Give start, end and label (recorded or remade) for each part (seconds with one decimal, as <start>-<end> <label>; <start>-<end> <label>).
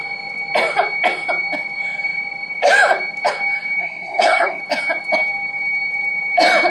0.0-3.8 recorded; 3.8-4.6 remade; 4.6-6.7 recorded